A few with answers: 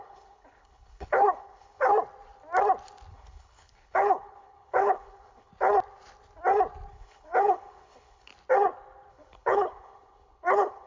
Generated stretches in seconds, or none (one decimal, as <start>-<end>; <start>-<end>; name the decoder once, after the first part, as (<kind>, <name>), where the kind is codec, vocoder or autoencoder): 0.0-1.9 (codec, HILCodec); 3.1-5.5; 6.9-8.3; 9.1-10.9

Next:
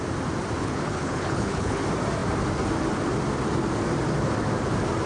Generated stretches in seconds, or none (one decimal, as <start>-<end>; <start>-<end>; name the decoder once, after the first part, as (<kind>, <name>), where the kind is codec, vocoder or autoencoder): 0.6-1.8 (codec, HILCodec)

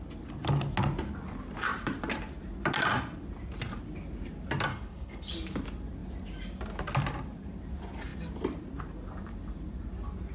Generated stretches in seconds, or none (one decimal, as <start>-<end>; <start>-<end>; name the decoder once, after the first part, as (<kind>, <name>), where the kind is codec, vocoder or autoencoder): 4.7-5.3 (codec, HILCodec)